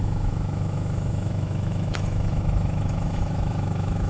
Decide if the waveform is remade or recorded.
remade